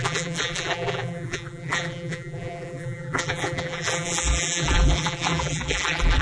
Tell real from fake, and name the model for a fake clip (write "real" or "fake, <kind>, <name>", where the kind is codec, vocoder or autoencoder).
fake, vocoder, BigVGAN v2